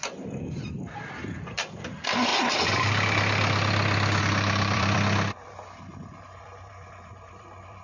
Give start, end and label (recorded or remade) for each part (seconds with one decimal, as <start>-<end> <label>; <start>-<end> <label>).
0.0-2.3 remade; 2.3-4.2 recorded; 4.2-7.8 remade